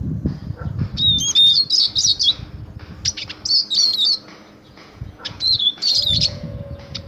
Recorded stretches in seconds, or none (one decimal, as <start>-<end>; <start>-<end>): 0.4-4.7